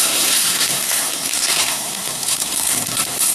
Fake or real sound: fake